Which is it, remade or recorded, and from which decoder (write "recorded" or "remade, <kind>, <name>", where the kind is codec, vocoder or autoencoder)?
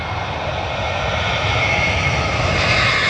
remade, vocoder, BigVGAN v2